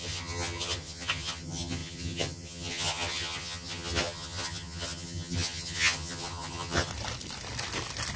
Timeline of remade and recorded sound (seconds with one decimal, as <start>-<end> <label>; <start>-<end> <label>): 0.0-6.9 remade; 6.9-8.2 recorded